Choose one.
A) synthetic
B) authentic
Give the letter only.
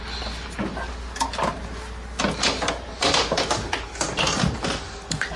B